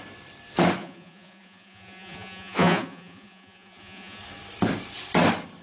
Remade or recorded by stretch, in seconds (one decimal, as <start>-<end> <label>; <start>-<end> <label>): 0.0-0.8 recorded; 0.8-4.2 remade; 4.2-5.6 recorded